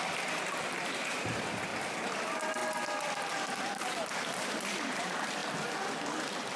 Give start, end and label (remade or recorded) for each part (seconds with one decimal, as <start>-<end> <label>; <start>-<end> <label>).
0.0-1.7 remade; 1.7-2.2 recorded; 2.2-2.6 remade; 2.6-3.6 recorded; 3.6-6.6 remade